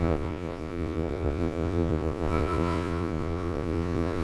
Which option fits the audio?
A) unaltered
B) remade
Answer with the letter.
B